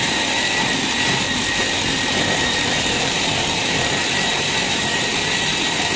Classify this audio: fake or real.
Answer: fake